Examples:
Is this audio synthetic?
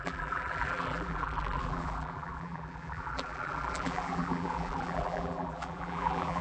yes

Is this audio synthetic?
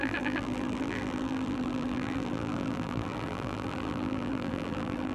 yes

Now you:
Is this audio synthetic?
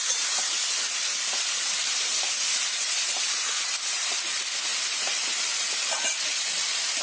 yes